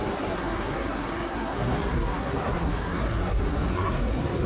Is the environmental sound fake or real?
fake